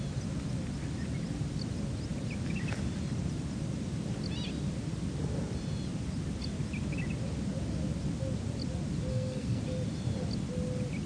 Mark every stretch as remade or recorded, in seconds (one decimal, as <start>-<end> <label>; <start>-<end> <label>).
0.0-9.1 recorded; 9.1-9.6 remade; 9.6-11.1 recorded